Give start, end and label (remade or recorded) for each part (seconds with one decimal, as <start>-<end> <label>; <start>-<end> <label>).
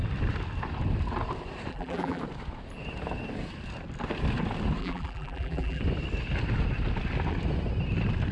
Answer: 0.0-1.7 recorded; 1.7-2.2 remade; 2.2-4.8 recorded; 4.8-5.8 remade; 5.8-8.3 recorded